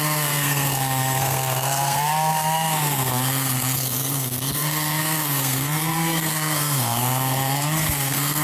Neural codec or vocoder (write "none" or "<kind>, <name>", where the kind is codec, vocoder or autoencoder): codec, SNAC